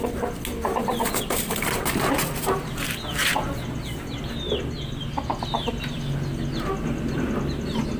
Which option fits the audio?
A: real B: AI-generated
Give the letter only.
A